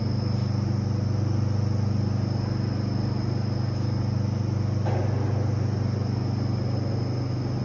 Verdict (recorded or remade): recorded